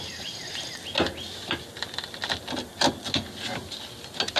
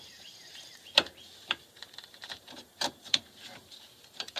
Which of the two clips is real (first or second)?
first